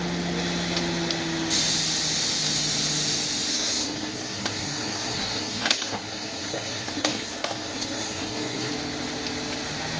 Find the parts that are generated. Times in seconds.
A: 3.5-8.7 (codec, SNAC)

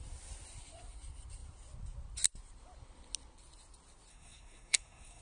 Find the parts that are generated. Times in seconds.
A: 4.1-5.2 (codec, SNAC)